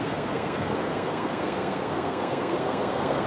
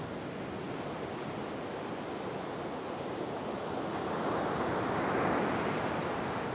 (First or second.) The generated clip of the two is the first